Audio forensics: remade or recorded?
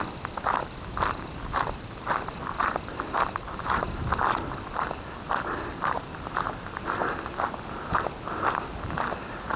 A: recorded